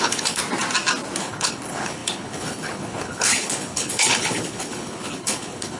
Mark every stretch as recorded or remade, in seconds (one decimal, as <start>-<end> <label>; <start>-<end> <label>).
0.0-0.4 remade; 0.4-1.2 recorded; 1.2-5.8 remade